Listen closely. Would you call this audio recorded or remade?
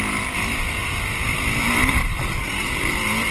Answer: remade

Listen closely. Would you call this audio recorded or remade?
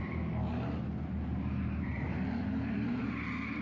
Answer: recorded